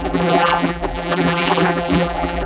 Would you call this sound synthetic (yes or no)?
yes